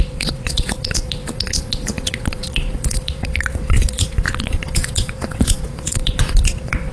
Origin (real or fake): fake